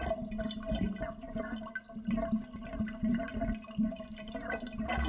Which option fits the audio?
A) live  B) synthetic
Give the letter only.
A